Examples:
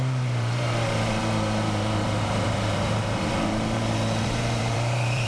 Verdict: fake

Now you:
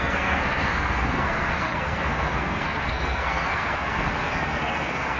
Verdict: fake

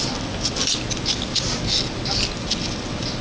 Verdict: real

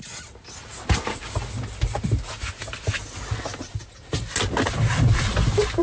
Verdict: real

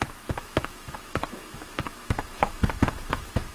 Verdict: fake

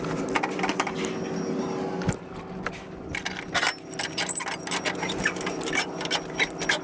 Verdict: real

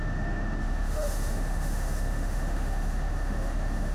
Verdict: fake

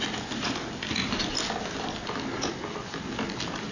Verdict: real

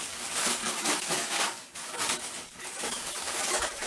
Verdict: fake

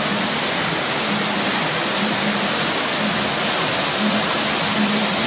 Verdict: real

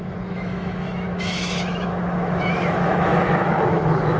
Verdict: fake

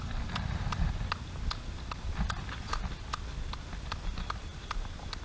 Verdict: real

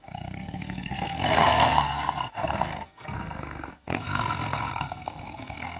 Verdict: fake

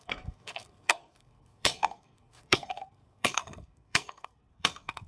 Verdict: fake